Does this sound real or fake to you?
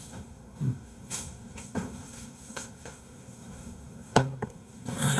fake